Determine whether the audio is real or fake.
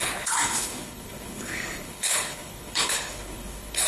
fake